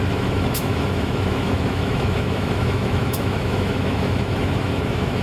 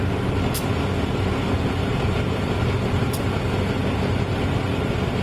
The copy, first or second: first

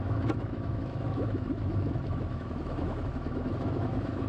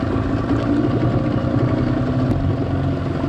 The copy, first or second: first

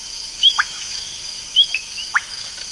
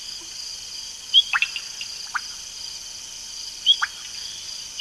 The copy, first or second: first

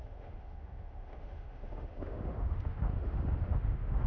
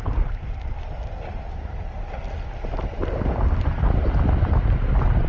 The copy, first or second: first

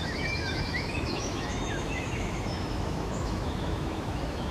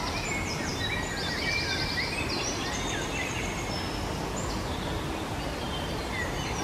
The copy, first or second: first